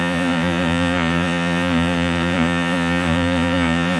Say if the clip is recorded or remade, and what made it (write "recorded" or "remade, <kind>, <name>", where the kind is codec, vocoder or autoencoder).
remade, vocoder, Vocos